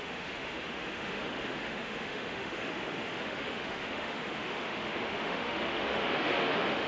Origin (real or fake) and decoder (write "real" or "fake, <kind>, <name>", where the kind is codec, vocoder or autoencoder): fake, autoencoder, DAC-VAE